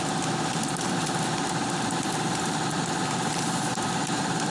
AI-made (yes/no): no